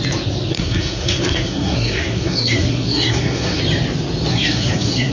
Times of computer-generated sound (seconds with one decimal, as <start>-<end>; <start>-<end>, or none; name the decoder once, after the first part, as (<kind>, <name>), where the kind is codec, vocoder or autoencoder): 0.5-3.6 (codec, SNAC); 4.3-5.1